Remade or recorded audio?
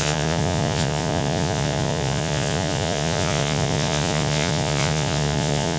remade